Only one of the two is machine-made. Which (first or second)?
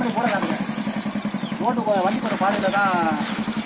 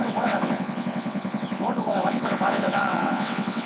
second